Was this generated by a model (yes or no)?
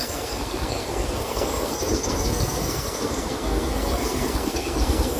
yes